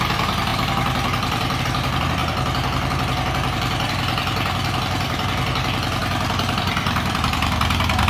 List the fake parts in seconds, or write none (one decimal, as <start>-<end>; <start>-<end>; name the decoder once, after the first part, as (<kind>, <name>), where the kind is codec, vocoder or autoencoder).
0.0-6.0 (vocoder, BigVGAN v2); 6.5-8.1